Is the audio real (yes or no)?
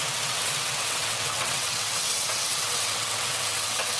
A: no